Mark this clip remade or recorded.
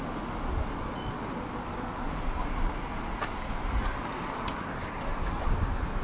recorded